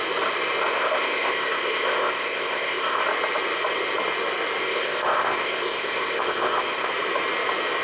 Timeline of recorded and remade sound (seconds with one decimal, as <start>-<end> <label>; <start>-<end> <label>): 0.0-0.7 recorded; 0.7-3.0 remade; 3.0-4.6 recorded; 4.6-6.9 remade; 6.9-7.8 recorded